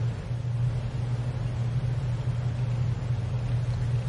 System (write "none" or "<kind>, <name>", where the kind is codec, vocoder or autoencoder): none